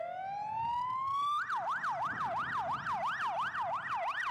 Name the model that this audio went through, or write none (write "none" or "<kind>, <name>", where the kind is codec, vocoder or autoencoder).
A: none